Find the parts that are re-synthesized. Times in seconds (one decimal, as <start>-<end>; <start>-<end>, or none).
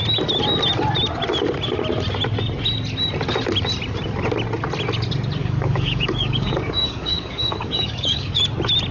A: 5.4-8.4